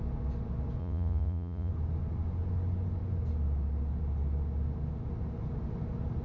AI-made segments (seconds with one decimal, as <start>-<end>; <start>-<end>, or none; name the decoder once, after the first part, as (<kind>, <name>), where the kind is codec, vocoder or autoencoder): 0.8-1.7 (vocoder, Vocos)